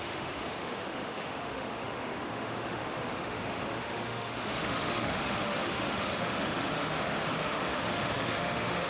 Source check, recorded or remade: remade